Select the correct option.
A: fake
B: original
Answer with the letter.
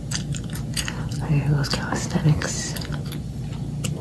B